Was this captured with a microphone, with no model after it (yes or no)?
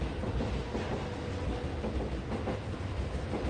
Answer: yes